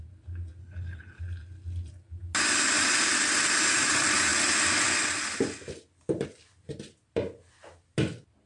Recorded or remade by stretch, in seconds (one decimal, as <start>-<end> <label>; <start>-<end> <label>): 0.0-0.6 recorded; 0.6-1.2 remade; 1.2-8.5 recorded